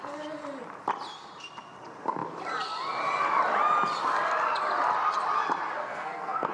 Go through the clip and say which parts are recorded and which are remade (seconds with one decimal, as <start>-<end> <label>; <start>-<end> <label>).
0.0-5.8 recorded; 5.8-6.5 remade